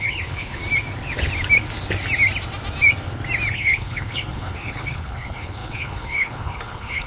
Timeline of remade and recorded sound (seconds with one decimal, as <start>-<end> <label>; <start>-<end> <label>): 0.0-0.6 remade; 0.6-3.5 recorded; 3.5-7.1 remade